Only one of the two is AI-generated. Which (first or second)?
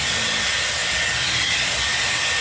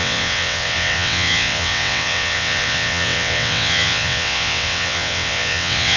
second